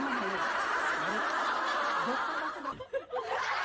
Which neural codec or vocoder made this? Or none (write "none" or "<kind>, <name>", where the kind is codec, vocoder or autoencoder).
none